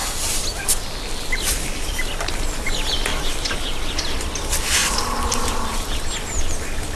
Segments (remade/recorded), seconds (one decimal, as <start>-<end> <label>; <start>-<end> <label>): 0.0-7.0 recorded